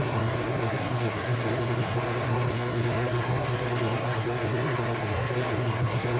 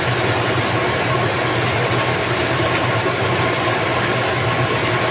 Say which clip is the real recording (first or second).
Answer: second